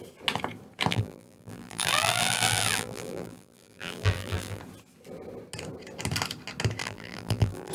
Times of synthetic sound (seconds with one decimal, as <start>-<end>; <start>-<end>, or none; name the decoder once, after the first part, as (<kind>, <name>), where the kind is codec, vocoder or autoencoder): 0.9-4.6 (vocoder, BigVGAN v2); 6.8-7.7